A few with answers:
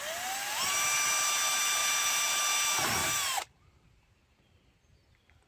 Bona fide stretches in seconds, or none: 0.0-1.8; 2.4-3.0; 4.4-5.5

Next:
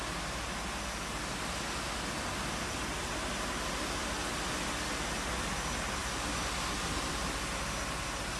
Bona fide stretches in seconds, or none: 0.0-8.4